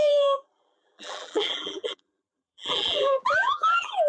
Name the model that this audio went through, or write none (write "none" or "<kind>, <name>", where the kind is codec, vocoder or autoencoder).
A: vocoder, BigVGAN v2